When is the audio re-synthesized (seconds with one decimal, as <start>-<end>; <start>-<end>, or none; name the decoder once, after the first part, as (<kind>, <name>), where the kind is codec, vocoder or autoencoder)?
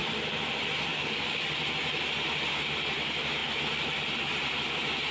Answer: 0.9-1.5 (codec, DAC)